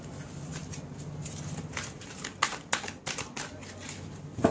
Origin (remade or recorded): recorded